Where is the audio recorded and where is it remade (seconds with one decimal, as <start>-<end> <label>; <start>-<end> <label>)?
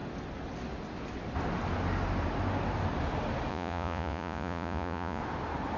0.0-3.5 recorded; 3.5-5.2 remade; 5.2-5.8 recorded